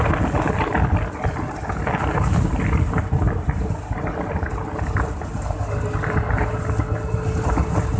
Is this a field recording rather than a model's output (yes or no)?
yes